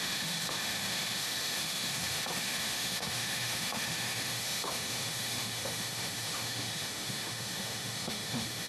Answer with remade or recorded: remade